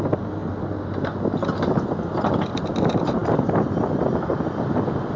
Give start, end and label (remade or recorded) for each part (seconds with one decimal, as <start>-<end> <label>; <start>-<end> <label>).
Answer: 0.0-5.2 recorded